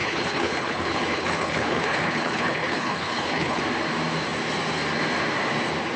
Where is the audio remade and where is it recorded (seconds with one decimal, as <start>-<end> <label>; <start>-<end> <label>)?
0.0-3.6 remade; 3.6-6.0 recorded